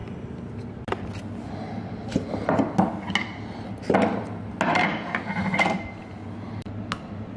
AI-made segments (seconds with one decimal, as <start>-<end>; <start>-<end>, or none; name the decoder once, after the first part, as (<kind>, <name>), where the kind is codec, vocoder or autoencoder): none